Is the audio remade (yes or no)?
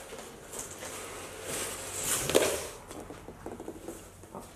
no